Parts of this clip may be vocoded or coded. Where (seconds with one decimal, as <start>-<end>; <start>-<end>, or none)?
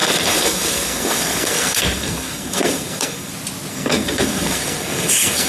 0.0-3.3; 3.7-5.5